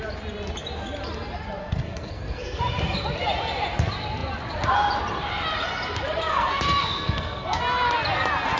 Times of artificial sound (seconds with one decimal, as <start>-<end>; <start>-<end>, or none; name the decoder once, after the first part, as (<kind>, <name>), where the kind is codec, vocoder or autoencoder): 1.6-2.6 (codec, SNAC); 6.3-7.6